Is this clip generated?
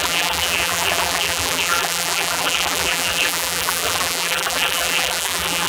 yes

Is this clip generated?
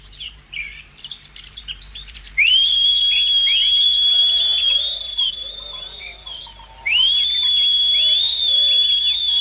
yes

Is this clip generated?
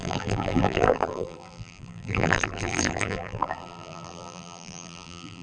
yes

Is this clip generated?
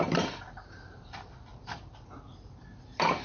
yes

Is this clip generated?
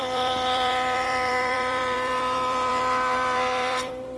yes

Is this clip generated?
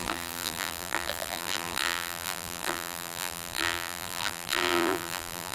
yes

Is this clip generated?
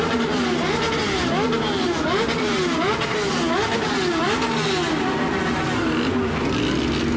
no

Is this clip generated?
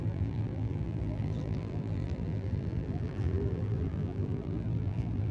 yes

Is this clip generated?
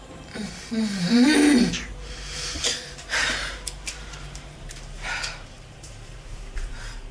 yes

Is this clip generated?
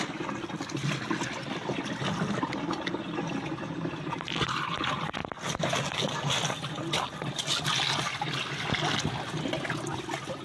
no